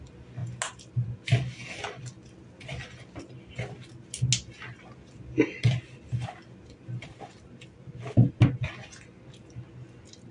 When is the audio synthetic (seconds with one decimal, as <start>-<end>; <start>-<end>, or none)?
none